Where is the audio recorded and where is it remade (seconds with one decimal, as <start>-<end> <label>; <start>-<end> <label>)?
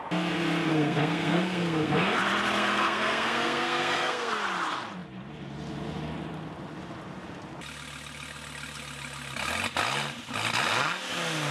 0.0-0.7 recorded; 0.7-2.2 remade; 2.2-2.6 recorded; 2.6-4.3 remade; 4.3-11.5 recorded